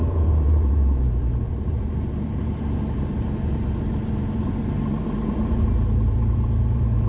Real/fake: fake